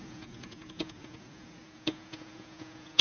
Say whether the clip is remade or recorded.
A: remade